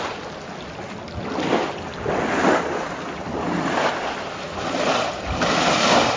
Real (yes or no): yes